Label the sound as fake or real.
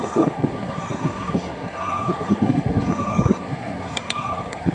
fake